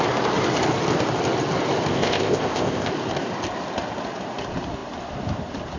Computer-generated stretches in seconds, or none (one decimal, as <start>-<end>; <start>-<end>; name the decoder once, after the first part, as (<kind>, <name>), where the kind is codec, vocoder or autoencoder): 1.9-2.9 (codec, ZipCodec)